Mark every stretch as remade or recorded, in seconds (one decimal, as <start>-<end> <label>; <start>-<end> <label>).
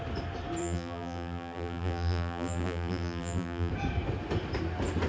0.0-0.6 recorded; 0.6-3.7 remade; 3.7-5.1 recorded